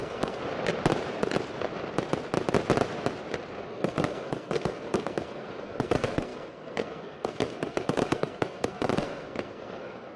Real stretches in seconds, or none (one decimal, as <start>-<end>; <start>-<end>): 0.4-3.6